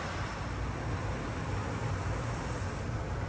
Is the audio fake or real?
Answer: real